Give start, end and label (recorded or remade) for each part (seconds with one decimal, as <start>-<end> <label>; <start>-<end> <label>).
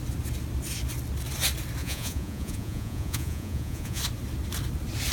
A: 0.0-1.8 recorded; 1.8-4.0 remade; 4.0-5.1 recorded